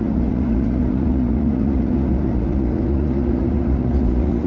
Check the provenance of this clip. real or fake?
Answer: fake